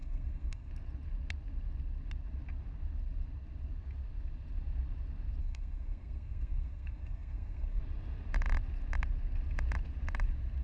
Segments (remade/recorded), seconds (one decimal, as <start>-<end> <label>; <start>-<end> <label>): 0.0-0.7 remade; 0.7-5.4 recorded; 5.4-7.8 remade; 7.8-10.6 recorded